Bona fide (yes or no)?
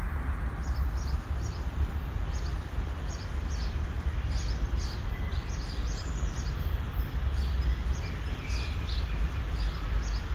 yes